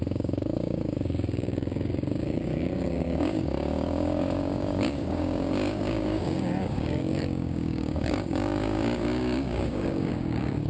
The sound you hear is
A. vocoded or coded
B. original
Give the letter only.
A